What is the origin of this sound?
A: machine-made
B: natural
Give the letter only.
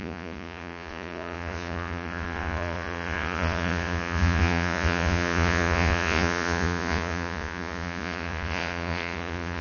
A